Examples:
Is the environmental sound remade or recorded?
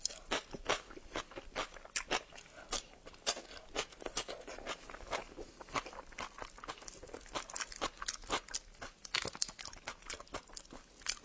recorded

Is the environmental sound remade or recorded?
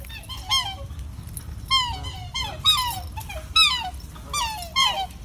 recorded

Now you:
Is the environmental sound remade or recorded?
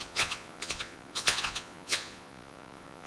remade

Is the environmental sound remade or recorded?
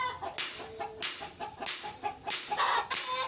recorded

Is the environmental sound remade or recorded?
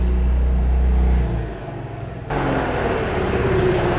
recorded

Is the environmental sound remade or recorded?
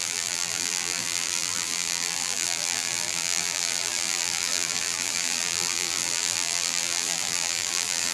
remade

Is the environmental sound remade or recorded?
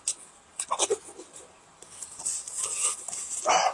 recorded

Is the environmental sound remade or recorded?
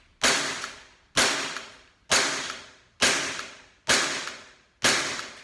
recorded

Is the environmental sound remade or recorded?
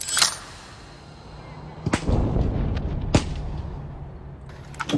recorded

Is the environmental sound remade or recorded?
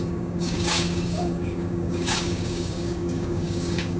remade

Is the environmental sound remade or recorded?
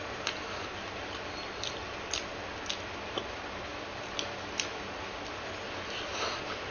recorded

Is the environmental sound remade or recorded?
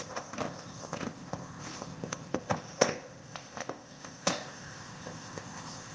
remade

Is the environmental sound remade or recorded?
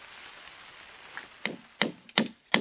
recorded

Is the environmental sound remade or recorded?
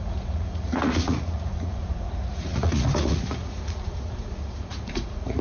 remade